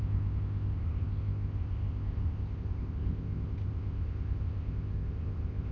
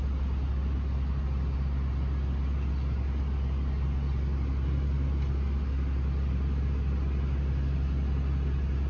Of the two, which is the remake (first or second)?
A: first